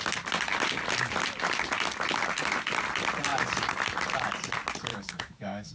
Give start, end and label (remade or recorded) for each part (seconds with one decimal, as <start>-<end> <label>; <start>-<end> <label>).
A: 0.0-4.9 recorded; 4.9-5.7 remade